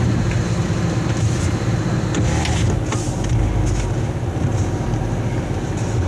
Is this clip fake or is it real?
real